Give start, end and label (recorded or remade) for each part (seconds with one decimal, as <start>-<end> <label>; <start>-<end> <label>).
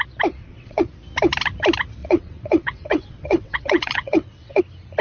0.0-0.4 recorded; 0.4-0.9 remade; 0.9-2.0 recorded; 2.0-4.6 remade; 4.6-5.0 recorded